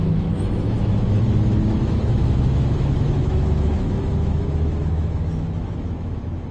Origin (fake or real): fake